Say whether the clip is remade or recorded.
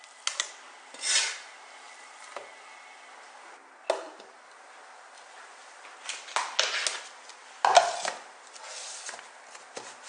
recorded